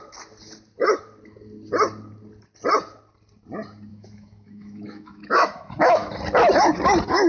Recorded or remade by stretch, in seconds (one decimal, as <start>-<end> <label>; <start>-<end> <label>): 0.0-3.9 recorded; 3.9-6.1 remade; 6.1-7.3 recorded